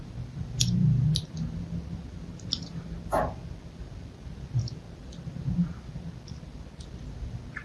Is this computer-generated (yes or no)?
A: no